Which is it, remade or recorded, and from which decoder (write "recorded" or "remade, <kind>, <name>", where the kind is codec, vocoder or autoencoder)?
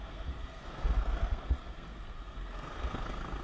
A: remade, codec, SNAC